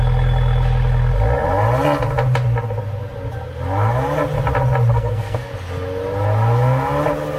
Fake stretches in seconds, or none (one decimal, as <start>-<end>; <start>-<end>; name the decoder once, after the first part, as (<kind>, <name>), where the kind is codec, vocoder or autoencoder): 4.9-5.5 (codec, SNAC)